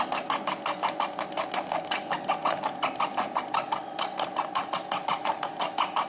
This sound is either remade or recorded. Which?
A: recorded